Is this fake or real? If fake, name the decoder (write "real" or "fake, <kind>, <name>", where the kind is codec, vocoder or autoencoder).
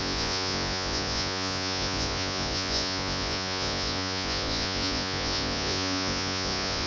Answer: fake, vocoder, Vocos